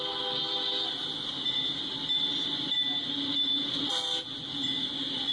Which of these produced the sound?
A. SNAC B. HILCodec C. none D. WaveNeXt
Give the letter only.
C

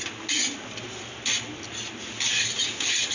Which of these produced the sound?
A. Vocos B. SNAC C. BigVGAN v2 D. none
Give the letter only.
D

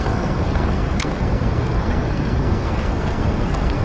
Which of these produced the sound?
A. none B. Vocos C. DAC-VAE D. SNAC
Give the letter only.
D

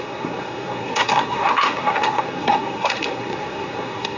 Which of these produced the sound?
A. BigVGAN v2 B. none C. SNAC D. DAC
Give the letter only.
C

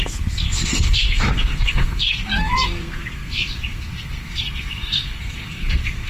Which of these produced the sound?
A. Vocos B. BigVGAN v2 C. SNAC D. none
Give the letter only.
C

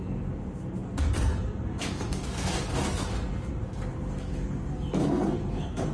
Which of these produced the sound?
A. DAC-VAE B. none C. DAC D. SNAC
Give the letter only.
D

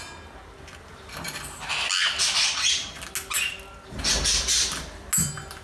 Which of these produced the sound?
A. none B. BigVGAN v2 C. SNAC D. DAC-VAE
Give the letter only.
A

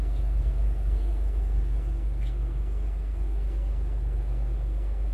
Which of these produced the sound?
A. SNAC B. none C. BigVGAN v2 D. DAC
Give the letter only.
A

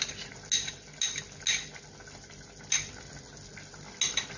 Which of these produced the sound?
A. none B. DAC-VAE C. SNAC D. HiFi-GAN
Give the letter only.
A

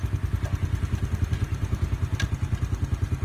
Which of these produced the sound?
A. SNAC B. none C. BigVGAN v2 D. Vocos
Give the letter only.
B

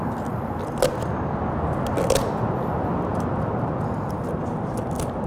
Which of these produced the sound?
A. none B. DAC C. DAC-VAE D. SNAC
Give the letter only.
A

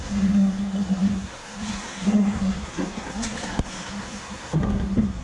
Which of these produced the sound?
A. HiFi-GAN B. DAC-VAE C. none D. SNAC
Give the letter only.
D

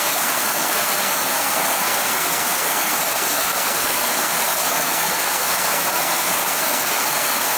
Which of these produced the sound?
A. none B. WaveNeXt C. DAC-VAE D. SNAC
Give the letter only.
D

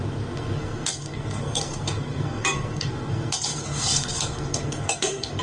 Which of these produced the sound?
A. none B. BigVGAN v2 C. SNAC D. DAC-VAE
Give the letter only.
C